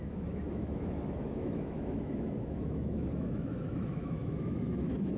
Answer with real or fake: fake